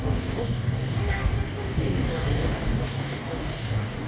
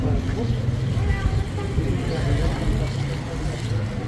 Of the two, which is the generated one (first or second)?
first